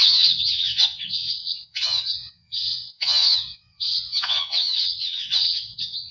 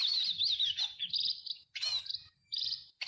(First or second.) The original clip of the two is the second